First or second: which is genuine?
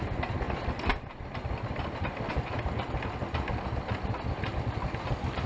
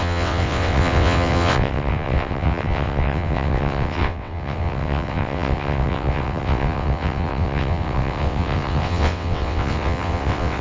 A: first